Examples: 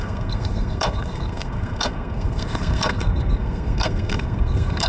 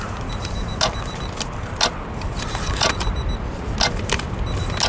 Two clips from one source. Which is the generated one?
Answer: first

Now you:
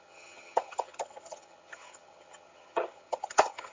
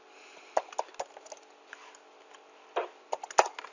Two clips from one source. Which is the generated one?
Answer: first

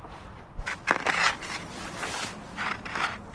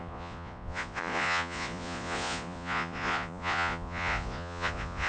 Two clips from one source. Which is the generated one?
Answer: second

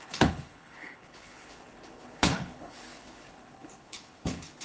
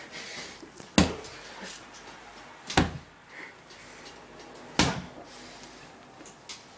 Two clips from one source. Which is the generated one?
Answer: first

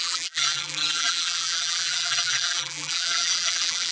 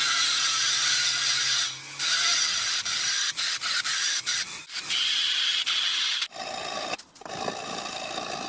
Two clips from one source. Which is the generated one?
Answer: first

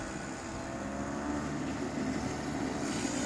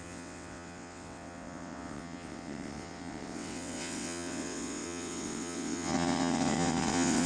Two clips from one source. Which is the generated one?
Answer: second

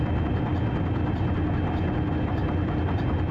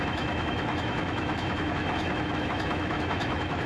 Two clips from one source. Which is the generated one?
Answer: second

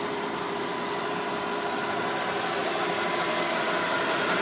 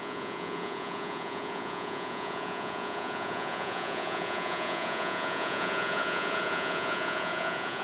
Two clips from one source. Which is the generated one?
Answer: second